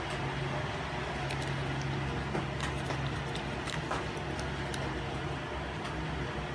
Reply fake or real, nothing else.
real